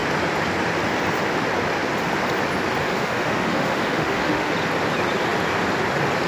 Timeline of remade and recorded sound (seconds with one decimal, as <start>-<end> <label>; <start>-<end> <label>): 0.0-2.8 recorded; 2.8-4.5 remade; 4.5-6.3 recorded